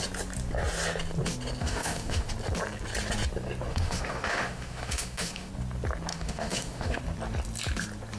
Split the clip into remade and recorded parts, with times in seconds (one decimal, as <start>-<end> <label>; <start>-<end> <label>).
0.0-1.6 recorded; 1.6-2.3 remade; 2.3-3.7 recorded; 3.7-5.5 remade; 5.5-6.1 recorded; 6.1-7.0 remade; 7.0-8.2 recorded